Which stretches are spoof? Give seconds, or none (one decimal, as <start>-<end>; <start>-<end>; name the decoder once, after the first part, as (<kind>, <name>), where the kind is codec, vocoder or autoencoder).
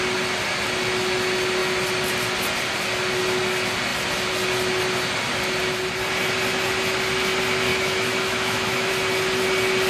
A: 7.7-8.9 (autoencoder, DAC-VAE)